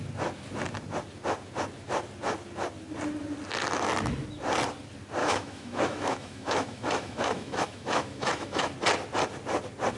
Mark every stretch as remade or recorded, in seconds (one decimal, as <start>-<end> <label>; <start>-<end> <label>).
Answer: 0.0-5.2 recorded; 5.2-8.7 remade; 8.7-10.0 recorded